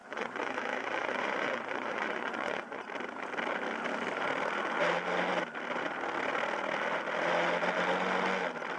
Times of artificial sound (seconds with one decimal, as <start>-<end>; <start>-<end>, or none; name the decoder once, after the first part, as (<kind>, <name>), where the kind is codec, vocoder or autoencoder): 0.0-2.8 (vocoder, Vocos)